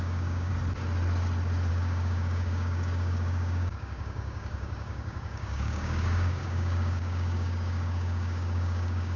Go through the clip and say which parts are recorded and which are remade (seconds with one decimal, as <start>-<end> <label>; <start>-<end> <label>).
0.0-0.5 remade; 0.5-1.7 recorded; 1.7-9.2 remade